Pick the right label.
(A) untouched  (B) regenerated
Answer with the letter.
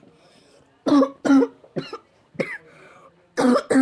A